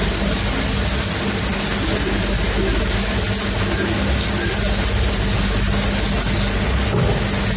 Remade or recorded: recorded